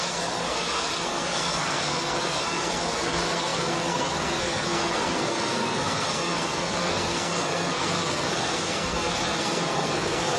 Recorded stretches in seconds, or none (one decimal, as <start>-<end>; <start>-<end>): none